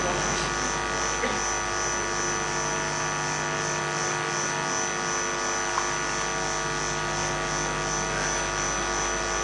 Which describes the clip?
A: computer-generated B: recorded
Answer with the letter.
B